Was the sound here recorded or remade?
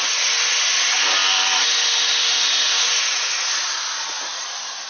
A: recorded